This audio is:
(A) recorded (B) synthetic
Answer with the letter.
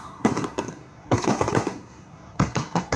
B